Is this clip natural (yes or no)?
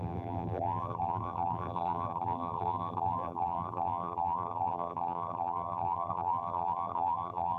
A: no